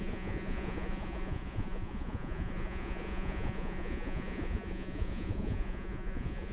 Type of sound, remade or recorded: remade